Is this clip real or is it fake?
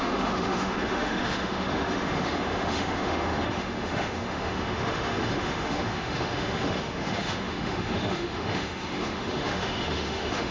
fake